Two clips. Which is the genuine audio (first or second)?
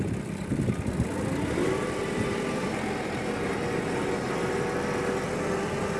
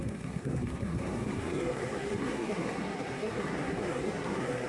first